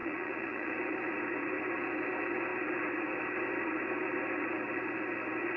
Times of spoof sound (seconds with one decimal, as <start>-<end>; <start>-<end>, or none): 0.0-0.7